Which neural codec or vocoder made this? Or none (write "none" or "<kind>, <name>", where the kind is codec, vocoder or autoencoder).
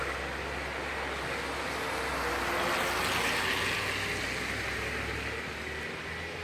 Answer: none